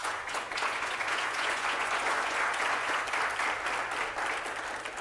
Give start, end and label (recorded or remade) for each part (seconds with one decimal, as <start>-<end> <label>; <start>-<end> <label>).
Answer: 0.0-3.0 remade; 3.0-5.0 recorded